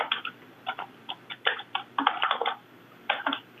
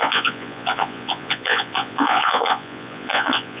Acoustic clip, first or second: first